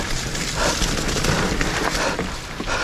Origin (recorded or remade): recorded